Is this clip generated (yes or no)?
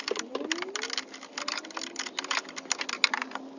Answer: no